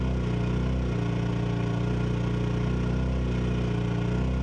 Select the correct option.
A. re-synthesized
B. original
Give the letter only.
B